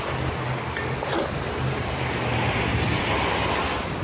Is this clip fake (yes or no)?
no